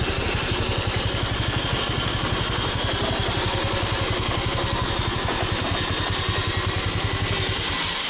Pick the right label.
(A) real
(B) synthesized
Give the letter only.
A